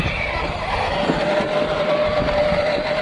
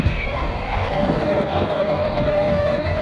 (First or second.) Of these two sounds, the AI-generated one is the second